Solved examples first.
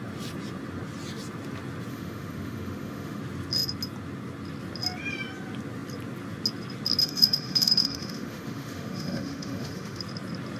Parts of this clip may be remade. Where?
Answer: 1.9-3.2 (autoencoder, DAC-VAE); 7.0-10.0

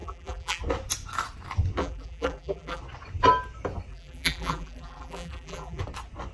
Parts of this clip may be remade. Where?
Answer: 0.0-0.6 (vocoder, BigVGAN v2); 1.8-2.8; 3.9-5.8

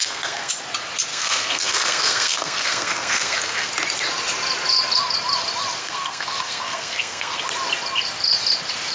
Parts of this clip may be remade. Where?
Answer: 0.0-0.5 (codec, SNAC); 1.1-3.7; 5.8-7.4

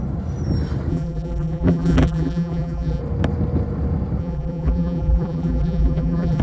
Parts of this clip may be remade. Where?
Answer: 0.9-3.0 (vocoder, BigVGAN v2); 4.2-6.4

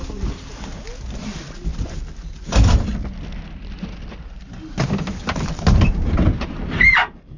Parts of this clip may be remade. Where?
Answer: none